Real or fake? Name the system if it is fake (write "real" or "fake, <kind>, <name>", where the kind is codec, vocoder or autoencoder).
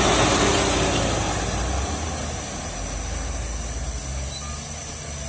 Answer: real